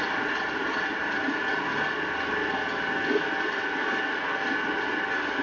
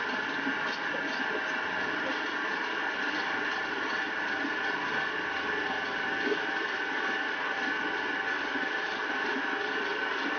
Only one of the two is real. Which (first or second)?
first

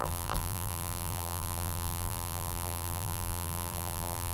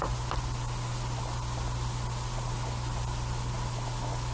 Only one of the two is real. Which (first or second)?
second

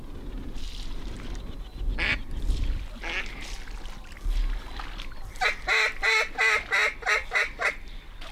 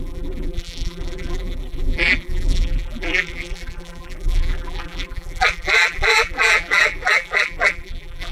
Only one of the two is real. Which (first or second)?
first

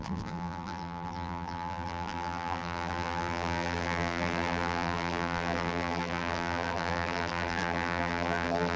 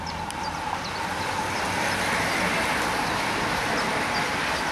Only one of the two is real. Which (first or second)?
second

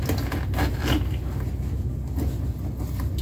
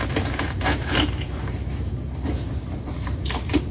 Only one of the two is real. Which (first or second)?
first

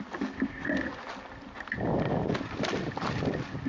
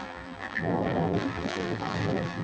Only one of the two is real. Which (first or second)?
first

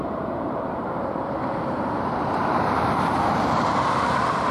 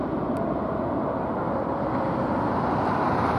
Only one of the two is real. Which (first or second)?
second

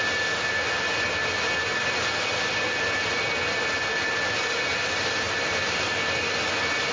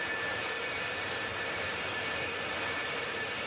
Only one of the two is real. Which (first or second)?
first